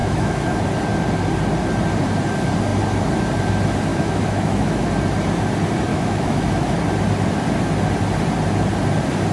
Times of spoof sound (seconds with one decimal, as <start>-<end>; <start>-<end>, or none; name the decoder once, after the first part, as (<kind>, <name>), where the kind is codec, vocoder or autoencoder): 0.0-0.6 (autoencoder, DAC-VAE); 3.9-4.9; 5.9-6.8